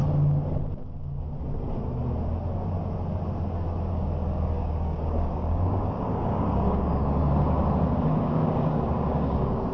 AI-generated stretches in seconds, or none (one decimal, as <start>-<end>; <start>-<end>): 3.9-7.2; 8.3-9.7